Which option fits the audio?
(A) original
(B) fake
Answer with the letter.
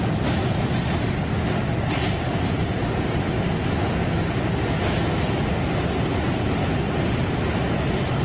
A